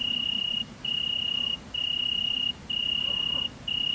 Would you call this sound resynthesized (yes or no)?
yes